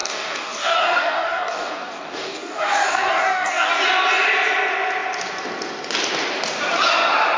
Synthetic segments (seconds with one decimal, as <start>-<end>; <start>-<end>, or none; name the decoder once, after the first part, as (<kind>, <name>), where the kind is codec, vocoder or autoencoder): 0.0-3.7 (codec, DAC)